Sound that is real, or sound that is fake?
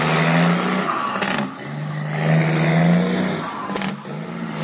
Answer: real